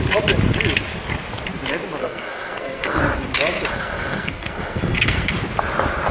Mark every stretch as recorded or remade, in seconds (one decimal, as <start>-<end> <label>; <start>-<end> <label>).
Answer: 0.0-2.0 recorded; 2.0-3.0 remade; 3.0-3.7 recorded; 3.7-5.3 remade; 5.3-6.1 recorded